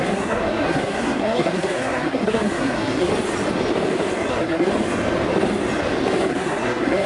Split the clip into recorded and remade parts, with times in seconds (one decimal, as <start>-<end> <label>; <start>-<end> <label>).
0.0-3.1 remade; 3.1-4.3 recorded; 4.3-4.7 remade; 4.7-6.3 recorded; 6.3-7.1 remade